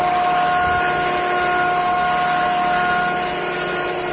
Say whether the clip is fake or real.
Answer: real